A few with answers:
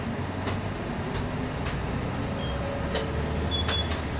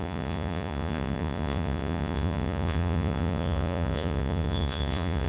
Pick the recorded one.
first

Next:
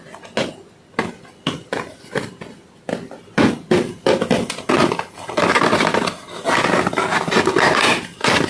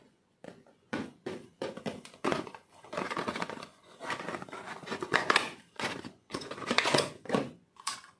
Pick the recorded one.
first